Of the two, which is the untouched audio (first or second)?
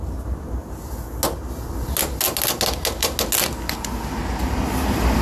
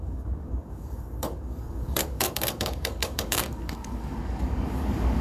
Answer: first